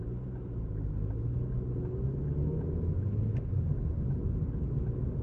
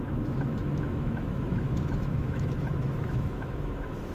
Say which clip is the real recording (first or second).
first